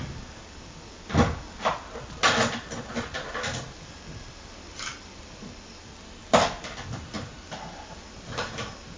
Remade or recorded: recorded